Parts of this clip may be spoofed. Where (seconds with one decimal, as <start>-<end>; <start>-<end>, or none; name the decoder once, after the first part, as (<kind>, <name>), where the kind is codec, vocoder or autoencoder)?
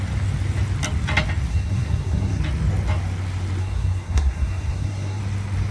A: 1.5-2.4 (codec, SNAC); 3.6-5.2